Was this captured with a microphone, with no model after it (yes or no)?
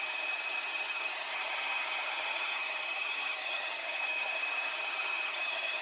no